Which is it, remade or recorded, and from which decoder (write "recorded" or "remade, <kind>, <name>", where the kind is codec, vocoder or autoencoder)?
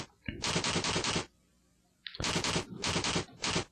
recorded